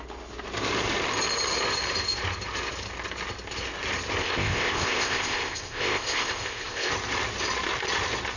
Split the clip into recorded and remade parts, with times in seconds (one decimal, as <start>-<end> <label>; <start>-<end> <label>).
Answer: 0.0-4.2 recorded; 4.2-6.9 remade; 6.9-8.4 recorded